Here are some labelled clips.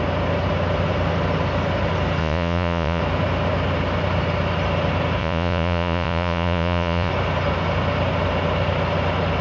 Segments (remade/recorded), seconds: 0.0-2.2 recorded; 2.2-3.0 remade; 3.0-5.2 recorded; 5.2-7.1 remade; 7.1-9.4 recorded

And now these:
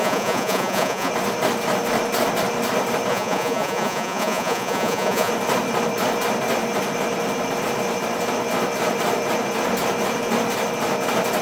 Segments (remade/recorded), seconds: 0.0-1.1 remade; 1.1-3.1 recorded; 3.1-5.3 remade; 5.3-11.4 recorded

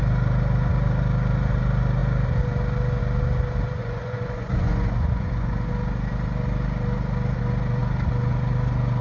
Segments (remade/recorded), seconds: 0.0-3.8 recorded; 3.8-5.7 remade; 5.7-9.0 recorded

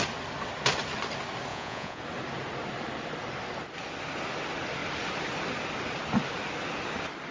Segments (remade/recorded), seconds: 0.0-1.5 recorded; 1.5-2.0 remade; 2.0-7.3 recorded

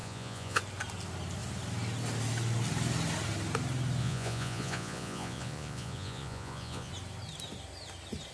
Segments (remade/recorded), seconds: 0.0-0.6 remade; 0.6-4.0 recorded; 4.0-6.9 remade; 6.9-8.3 recorded

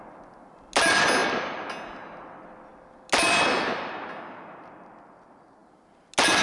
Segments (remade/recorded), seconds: 0.0-6.4 recorded